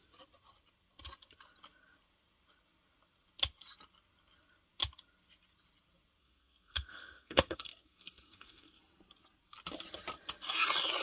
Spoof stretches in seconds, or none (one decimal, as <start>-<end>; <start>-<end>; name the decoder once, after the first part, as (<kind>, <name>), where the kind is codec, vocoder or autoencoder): 6.2-8.8 (codec, SNAC)